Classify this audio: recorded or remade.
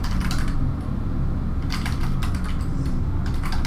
recorded